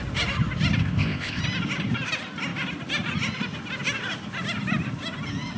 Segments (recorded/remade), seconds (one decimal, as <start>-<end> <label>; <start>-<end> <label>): 0.0-0.8 recorded; 0.8-1.4 remade; 1.4-5.6 recorded